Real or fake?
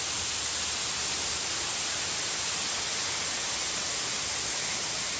real